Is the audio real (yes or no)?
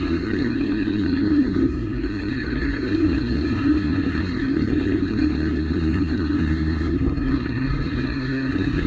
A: no